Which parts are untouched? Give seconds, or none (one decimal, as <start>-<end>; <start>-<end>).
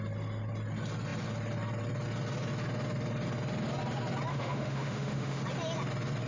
0.0-4.3; 5.4-6.3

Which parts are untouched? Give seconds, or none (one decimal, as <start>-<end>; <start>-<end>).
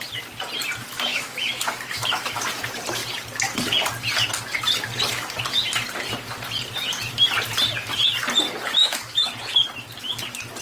0.0-1.1; 2.5-8.8; 9.3-10.6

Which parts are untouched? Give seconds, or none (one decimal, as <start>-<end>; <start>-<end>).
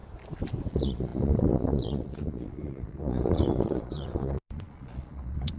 0.0-0.7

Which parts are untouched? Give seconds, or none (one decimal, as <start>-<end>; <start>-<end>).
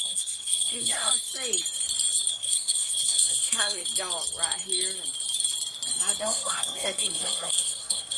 1.1-2.3; 3.8-6.2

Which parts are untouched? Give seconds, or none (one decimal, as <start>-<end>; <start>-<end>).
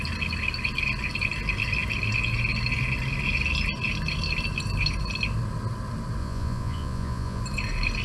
0.0-6.2; 7.4-8.0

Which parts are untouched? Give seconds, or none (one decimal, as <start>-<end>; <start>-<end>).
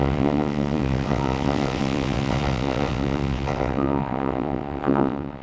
none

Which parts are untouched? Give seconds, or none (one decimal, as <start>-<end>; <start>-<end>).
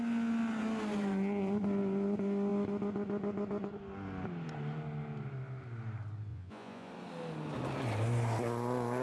0.0-6.3; 6.9-9.0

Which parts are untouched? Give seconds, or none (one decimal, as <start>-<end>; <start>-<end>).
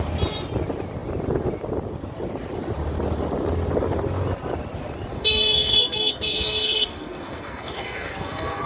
0.0-5.1